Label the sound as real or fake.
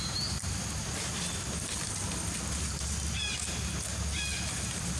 real